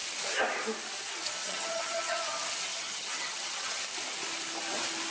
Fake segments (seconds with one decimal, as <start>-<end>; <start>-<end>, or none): 1.4-2.2; 2.7-3.8